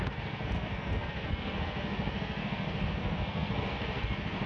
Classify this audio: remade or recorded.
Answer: remade